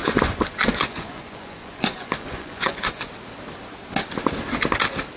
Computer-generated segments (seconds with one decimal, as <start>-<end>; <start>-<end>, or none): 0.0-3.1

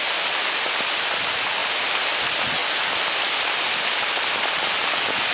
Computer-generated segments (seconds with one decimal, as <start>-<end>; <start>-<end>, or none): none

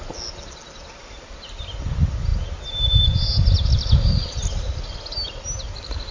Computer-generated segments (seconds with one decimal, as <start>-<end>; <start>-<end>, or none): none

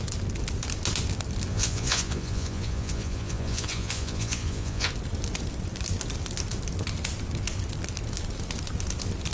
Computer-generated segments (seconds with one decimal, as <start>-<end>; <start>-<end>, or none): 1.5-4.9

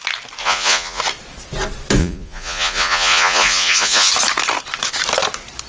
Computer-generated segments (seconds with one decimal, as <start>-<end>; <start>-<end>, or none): 0.4-1.0; 2.0-4.1

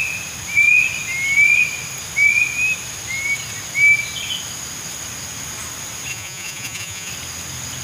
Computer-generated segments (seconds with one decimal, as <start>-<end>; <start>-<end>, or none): 6.1-7.1

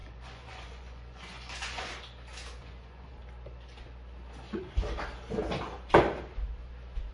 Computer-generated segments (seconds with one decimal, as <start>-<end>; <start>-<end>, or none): 0.0-1.9; 2.6-3.1

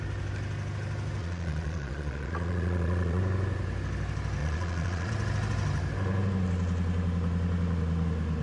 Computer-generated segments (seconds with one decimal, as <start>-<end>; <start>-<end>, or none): 1.2-3.2; 4.4-5.1